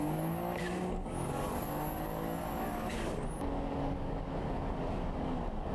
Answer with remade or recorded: remade